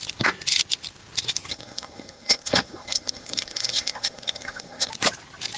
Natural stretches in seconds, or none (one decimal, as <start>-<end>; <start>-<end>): 0.0-1.5; 4.9-5.6